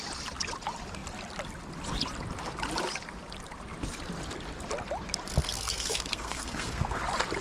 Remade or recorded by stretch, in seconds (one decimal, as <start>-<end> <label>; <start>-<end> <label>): 0.0-5.4 recorded; 5.4-7.0 remade; 7.0-7.4 recorded